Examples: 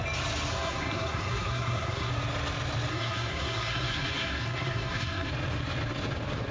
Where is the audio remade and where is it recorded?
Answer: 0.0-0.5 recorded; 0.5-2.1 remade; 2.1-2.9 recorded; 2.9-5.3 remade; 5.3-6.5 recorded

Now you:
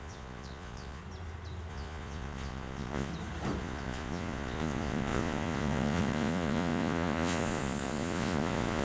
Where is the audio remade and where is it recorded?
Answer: 0.0-1.0 remade; 1.0-1.7 recorded; 1.7-3.1 remade; 3.1-3.6 recorded; 3.6-8.8 remade

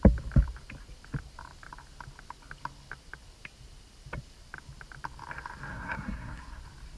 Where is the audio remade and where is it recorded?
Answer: 0.0-5.7 recorded; 5.7-6.6 remade; 6.6-7.0 recorded

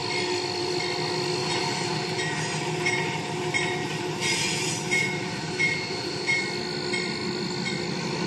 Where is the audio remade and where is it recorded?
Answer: 0.0-1.4 recorded; 1.4-6.4 remade; 6.4-8.3 recorded